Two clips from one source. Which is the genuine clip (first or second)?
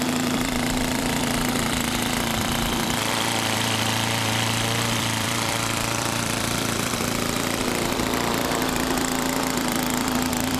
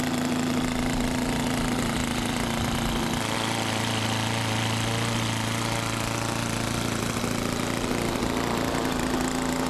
second